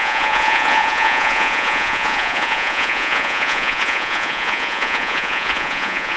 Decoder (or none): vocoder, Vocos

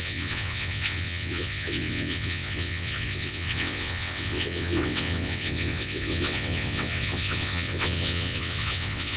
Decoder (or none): vocoder, WaveNeXt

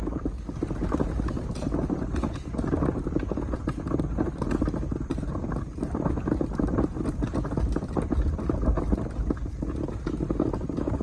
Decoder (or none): none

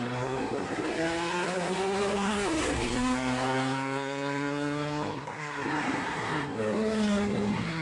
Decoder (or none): codec, SNAC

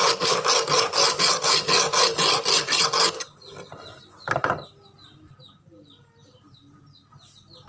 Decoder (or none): none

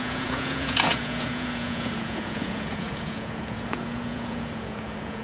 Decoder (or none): vocoder, Vocos